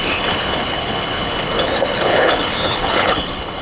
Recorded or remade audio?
remade